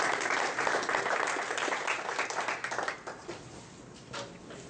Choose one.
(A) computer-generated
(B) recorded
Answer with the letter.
B